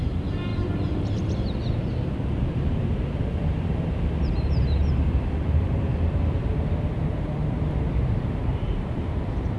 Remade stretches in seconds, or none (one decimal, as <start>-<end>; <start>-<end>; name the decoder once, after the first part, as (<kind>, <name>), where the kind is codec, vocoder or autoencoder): 0.0-5.9 (vocoder, BigVGAN v2); 7.0-9.6